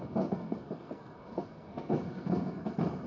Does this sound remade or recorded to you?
remade